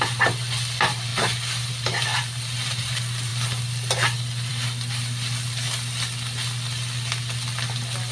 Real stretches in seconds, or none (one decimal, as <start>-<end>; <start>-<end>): 0.0-8.1